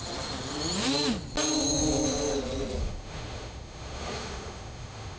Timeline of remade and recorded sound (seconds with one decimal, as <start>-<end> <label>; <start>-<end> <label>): 0.0-2.8 recorded; 2.8-5.2 remade